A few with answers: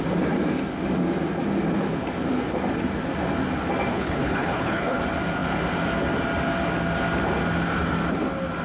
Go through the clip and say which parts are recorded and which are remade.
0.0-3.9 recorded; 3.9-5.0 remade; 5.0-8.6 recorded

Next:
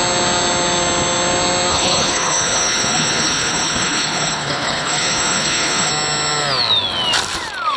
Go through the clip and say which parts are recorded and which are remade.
0.0-1.7 recorded; 1.7-5.9 remade; 5.9-7.8 recorded

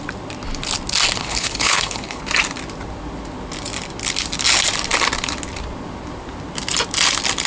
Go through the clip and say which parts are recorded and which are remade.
0.0-1.2 recorded; 1.2-2.2 remade; 2.2-7.5 recorded

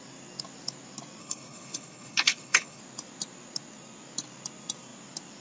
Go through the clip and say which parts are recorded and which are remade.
0.0-1.2 recorded; 1.2-2.8 remade; 2.8-5.4 recorded

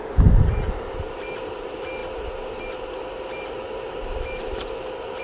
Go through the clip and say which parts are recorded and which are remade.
0.0-5.2 recorded

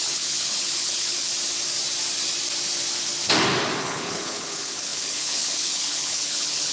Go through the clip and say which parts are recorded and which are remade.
0.0-1.3 remade; 1.3-3.8 recorded; 3.8-6.7 remade

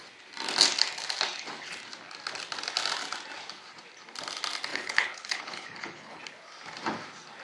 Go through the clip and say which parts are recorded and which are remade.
0.0-4.7 recorded; 4.7-6.2 remade; 6.2-7.4 recorded